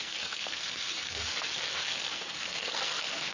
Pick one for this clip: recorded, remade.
remade